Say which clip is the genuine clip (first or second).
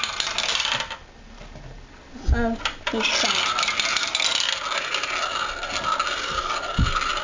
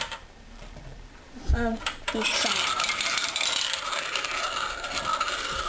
first